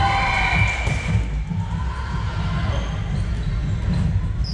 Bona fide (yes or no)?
yes